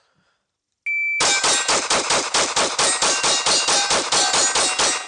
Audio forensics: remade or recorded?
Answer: recorded